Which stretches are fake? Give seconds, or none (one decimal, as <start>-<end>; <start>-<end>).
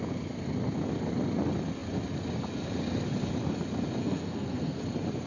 4.0-4.8